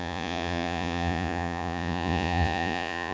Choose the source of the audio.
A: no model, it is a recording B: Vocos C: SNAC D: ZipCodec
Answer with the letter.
B